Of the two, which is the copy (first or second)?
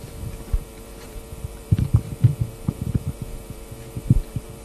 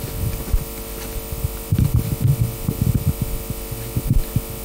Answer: first